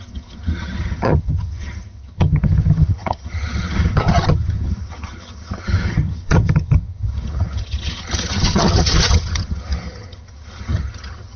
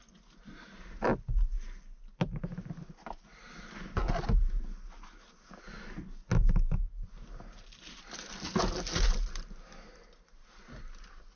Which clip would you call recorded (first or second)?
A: second